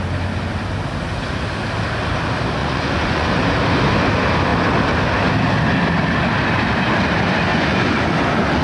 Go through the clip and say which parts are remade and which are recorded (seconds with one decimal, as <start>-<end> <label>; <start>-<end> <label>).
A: 0.0-2.6 recorded; 2.6-3.4 remade; 3.4-7.5 recorded; 7.5-8.0 remade; 8.0-8.6 recorded